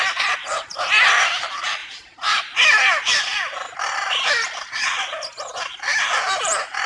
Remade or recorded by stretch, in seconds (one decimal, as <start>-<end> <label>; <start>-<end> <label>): 0.0-1.8 recorded; 1.8-2.4 remade; 2.4-6.9 recorded